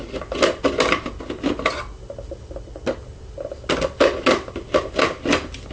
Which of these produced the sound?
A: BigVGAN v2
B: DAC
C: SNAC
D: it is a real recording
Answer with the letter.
D